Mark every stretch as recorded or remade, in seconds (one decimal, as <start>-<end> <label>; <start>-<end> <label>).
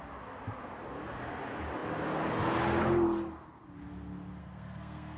0.0-4.4 recorded; 4.4-5.2 remade